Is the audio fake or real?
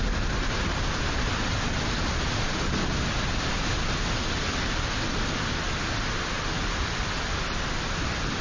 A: real